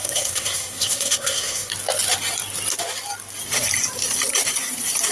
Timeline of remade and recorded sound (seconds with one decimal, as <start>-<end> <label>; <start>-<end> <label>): 0.0-1.7 remade; 1.7-5.1 recorded